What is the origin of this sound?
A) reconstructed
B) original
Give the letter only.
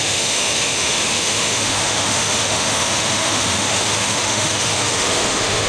A